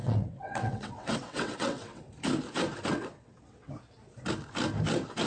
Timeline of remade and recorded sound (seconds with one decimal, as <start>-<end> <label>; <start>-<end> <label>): 0.0-2.0 remade; 2.0-2.9 recorded; 2.9-3.7 remade; 3.7-5.3 recorded